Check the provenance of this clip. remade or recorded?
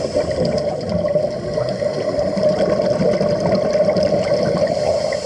recorded